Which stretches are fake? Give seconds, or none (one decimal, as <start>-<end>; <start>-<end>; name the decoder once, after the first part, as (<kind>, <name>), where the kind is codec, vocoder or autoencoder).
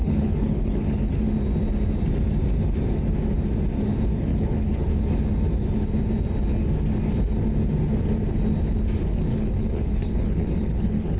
0.0-1.2 (codec, HILCodec); 4.3-4.9; 9.3-11.2